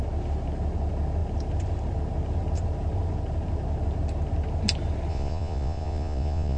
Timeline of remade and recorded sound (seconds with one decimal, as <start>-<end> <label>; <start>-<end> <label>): 0.0-5.1 recorded; 5.1-6.6 remade